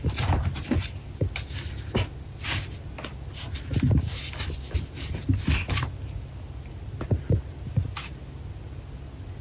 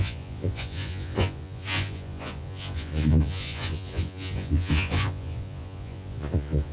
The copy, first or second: second